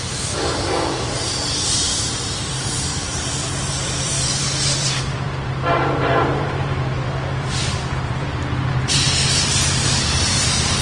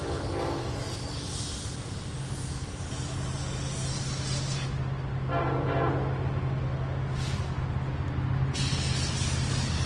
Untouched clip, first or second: second